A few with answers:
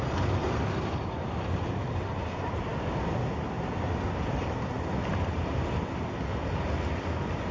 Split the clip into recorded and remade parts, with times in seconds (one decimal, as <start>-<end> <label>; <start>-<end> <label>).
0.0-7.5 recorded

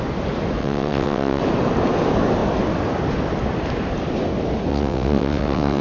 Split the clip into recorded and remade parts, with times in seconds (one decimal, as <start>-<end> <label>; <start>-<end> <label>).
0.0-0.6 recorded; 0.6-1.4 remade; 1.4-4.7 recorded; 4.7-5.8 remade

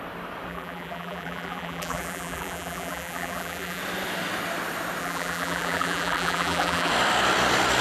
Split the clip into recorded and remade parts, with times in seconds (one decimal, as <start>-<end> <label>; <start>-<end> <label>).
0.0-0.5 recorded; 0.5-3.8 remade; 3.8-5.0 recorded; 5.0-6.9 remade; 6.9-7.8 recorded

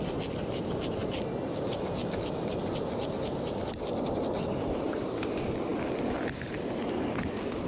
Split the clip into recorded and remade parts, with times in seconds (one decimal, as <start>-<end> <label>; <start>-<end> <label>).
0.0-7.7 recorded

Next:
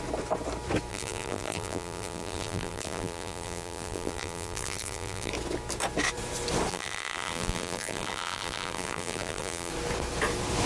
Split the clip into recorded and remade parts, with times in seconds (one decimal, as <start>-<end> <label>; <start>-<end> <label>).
0.0-0.9 recorded; 0.9-5.3 remade; 5.3-6.7 recorded; 6.7-9.7 remade; 9.7-10.7 recorded